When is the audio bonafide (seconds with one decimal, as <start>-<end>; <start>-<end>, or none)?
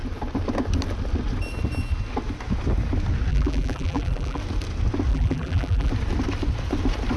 0.0-3.3; 4.4-5.1; 5.9-7.2